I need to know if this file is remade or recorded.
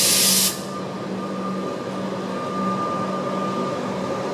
recorded